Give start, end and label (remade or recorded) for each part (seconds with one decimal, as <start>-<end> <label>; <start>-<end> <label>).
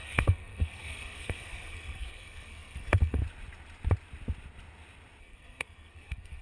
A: 0.0-3.2 remade; 3.2-5.2 recorded; 5.2-6.4 remade